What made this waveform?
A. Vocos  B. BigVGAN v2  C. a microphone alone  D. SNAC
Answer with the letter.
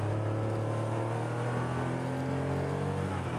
C